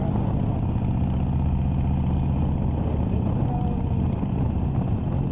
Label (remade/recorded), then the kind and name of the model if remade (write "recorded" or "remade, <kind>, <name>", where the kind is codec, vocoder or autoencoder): recorded